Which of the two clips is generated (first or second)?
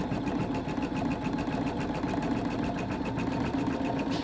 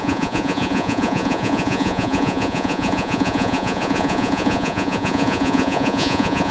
second